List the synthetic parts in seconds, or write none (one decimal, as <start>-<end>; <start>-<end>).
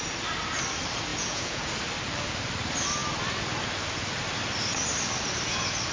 1.1-1.7